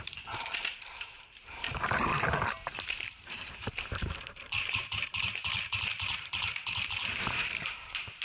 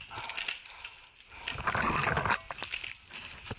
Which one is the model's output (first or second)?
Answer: first